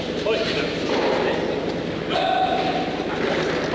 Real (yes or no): yes